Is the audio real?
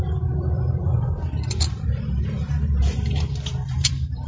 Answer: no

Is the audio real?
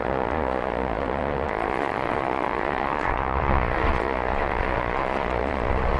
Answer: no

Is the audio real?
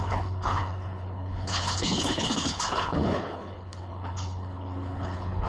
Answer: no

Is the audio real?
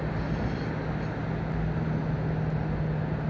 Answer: yes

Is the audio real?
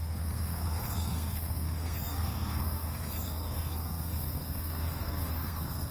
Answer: no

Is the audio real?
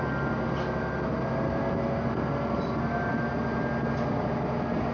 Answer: yes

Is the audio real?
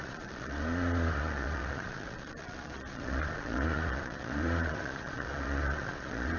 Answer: no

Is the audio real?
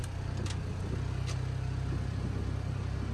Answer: yes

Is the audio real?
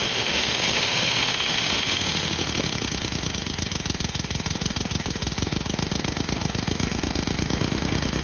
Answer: no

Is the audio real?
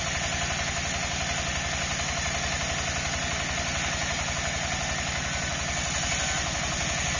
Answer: yes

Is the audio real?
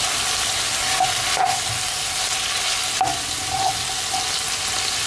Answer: yes